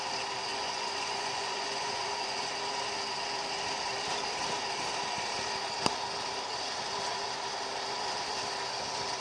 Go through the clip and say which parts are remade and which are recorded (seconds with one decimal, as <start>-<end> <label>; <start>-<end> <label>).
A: 0.0-0.5 recorded; 0.5-2.5 remade; 2.5-9.2 recorded